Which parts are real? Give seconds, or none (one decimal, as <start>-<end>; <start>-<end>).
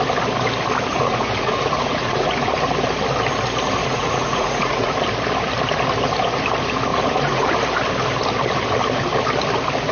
0.0-0.9; 2.5-3.8; 4.9-6.9; 7.5-9.9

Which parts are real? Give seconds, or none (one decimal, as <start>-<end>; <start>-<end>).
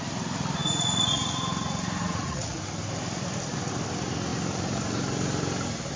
0.0-0.6; 1.3-2.0; 2.6-6.0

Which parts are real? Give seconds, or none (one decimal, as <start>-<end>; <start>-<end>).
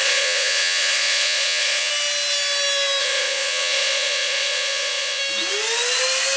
1.9-3.0; 5.2-6.4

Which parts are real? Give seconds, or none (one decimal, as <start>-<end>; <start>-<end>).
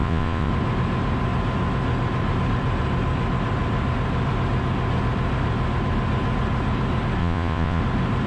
0.5-7.2; 7.8-8.3